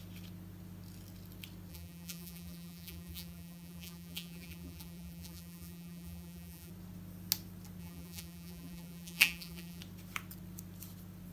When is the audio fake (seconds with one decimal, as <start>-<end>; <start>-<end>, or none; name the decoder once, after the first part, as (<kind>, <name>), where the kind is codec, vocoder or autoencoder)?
1.7-6.7 (vocoder, BigVGAN v2); 7.8-9.8

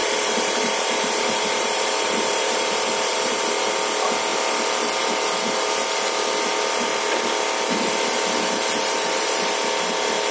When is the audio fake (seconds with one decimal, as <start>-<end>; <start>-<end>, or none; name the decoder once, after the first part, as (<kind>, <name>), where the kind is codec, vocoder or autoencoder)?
0.0-3.7 (vocoder, BigVGAN v2); 8.8-9.5

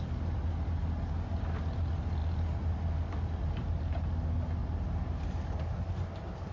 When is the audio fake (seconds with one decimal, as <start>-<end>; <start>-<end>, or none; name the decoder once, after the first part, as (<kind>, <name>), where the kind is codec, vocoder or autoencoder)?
none

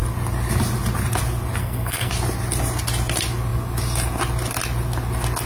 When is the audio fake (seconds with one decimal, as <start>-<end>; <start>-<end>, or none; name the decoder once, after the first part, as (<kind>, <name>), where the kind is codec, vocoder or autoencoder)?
1.6-2.1 (codec, SNAC)

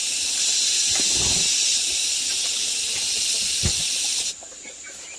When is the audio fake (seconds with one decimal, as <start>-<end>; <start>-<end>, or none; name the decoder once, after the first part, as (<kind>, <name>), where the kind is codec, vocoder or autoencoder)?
0.7-2.0 (vocoder, BigVGAN v2); 2.8-5.2

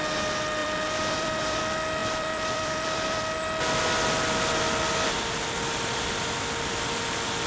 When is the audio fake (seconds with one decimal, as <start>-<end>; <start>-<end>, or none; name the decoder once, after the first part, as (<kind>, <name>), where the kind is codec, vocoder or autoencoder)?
0.6-1.6 (vocoder, BigVGAN v2); 2.0-3.2